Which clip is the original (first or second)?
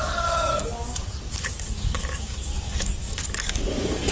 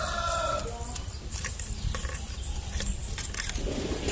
second